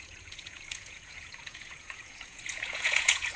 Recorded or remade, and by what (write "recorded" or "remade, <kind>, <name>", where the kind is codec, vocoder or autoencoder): remade, vocoder, Vocos